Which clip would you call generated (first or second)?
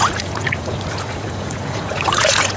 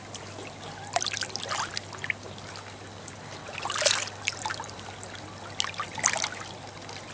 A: first